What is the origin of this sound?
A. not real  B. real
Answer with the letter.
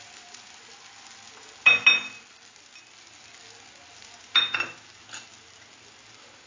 B